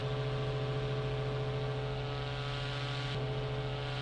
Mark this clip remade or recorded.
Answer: recorded